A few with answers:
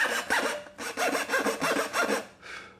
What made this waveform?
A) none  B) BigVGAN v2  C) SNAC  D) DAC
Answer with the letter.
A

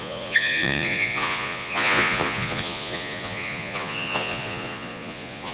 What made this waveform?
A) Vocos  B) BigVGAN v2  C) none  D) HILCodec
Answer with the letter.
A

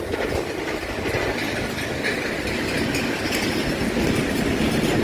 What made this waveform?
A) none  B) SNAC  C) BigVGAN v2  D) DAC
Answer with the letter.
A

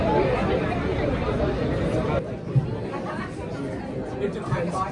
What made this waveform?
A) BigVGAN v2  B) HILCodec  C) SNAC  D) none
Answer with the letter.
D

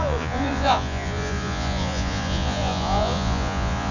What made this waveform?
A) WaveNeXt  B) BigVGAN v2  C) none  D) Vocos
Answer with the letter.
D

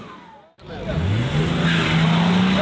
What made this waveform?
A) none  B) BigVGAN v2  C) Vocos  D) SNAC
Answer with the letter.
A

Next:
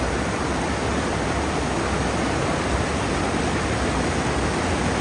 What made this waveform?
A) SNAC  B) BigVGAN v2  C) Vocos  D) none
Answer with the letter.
D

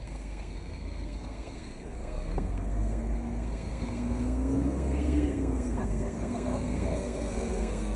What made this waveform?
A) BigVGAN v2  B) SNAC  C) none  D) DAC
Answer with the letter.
B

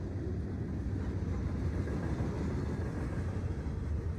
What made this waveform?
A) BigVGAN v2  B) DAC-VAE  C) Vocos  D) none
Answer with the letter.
D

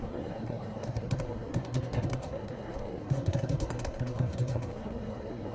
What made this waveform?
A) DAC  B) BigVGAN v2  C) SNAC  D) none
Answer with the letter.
C